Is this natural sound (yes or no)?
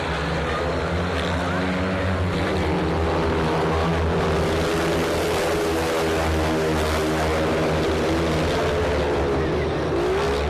yes